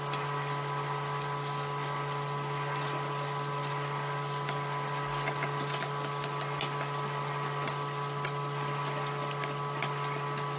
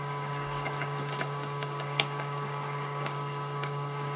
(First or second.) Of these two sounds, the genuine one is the first